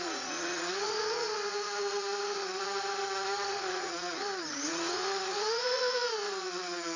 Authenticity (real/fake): fake